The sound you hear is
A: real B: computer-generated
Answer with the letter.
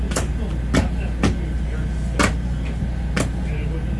A